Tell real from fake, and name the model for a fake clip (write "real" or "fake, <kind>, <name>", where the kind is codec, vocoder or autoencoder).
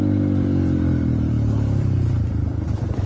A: fake, vocoder, BigVGAN v2